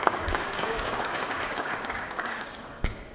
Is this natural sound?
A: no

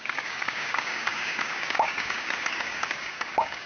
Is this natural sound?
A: no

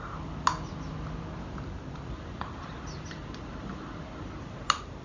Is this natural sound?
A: yes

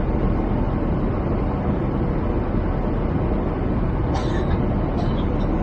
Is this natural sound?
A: yes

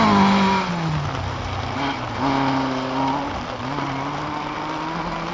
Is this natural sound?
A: yes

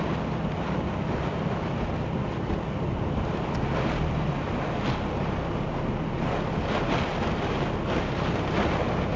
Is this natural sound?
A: yes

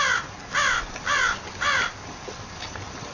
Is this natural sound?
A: yes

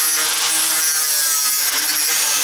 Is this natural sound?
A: yes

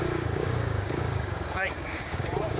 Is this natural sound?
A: no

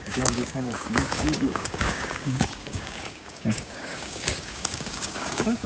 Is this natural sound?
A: no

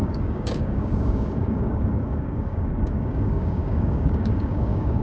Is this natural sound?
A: no